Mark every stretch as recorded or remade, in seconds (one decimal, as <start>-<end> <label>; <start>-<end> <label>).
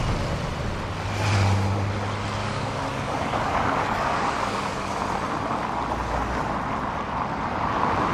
0.0-2.4 recorded; 2.4-5.0 remade; 5.0-8.1 recorded